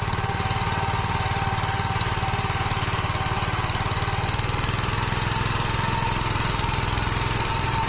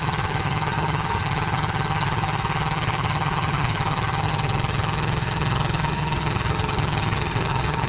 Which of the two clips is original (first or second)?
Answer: first